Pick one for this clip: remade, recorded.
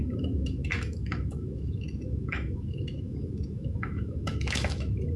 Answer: remade